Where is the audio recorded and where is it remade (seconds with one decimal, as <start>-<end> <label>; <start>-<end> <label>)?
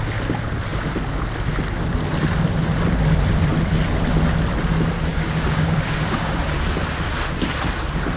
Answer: 0.0-5.1 recorded; 5.1-6.4 remade; 6.4-8.2 recorded